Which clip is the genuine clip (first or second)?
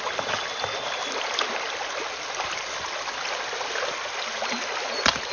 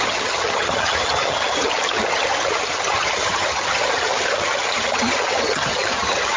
first